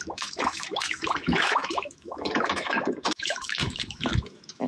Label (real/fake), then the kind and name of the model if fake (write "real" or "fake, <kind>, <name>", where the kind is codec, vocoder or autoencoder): fake, autoencoder, DAC-VAE